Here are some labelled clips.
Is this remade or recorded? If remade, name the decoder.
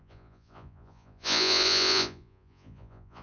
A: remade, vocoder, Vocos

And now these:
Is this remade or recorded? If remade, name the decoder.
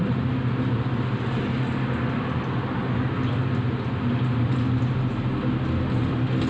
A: recorded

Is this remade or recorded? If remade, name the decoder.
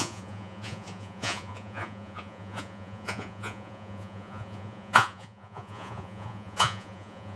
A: remade, vocoder, Vocos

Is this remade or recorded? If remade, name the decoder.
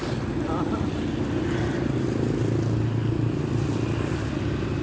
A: recorded